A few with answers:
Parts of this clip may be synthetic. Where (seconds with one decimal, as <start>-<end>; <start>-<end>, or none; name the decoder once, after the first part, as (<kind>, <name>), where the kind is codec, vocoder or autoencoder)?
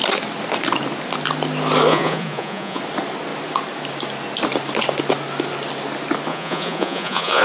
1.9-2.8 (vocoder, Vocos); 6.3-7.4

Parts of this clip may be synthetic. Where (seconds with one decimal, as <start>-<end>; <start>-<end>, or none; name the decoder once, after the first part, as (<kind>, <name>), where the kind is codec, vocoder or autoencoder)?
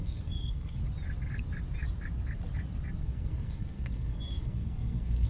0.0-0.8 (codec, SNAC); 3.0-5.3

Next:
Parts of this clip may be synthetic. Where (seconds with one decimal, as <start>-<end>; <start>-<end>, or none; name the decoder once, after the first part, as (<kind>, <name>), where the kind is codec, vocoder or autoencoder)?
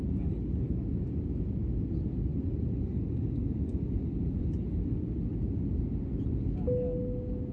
none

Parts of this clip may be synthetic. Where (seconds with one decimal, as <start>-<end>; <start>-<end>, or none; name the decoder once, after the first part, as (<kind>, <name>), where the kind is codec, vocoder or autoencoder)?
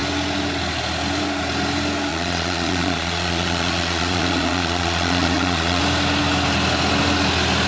2.1-5.8 (vocoder, Vocos)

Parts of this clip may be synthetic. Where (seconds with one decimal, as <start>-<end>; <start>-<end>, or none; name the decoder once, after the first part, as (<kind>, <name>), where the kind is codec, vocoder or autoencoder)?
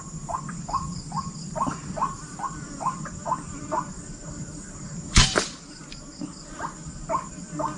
0.0-7.8 (vocoder, BigVGAN v2)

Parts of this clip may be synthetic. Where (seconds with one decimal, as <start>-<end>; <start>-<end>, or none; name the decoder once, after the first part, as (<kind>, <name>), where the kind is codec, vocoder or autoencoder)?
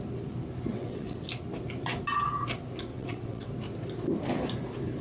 0.7-1.2 (vocoder, WaveNeXt); 2.9-3.5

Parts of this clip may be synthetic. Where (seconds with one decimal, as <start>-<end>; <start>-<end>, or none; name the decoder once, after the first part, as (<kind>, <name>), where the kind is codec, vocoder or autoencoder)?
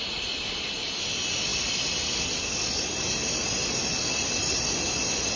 none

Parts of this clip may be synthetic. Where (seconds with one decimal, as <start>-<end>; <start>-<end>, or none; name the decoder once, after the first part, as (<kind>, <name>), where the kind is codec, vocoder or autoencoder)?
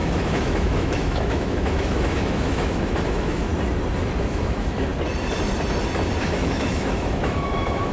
0.0-3.5 (autoencoder, DAC-VAE); 4.2-4.9; 6.2-7.9